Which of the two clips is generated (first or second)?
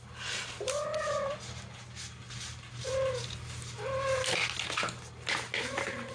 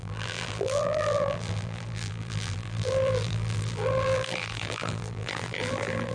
second